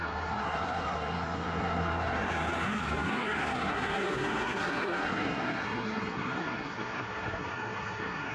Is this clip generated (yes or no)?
yes